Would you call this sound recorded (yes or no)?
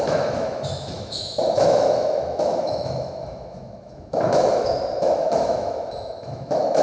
no